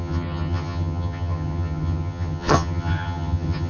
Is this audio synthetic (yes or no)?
yes